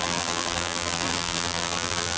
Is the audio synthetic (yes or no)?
yes